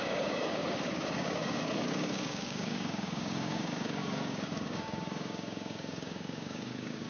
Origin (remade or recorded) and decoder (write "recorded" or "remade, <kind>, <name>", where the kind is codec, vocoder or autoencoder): remade, codec, DAC